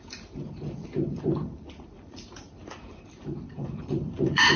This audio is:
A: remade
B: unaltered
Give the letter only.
A